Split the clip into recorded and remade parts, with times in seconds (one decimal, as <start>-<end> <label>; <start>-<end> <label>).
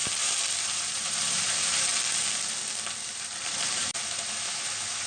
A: 0.0-0.6 recorded; 0.6-1.9 remade; 1.9-3.1 recorded; 3.1-3.9 remade; 3.9-5.1 recorded